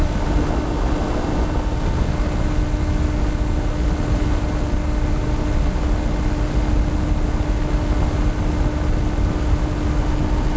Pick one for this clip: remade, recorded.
recorded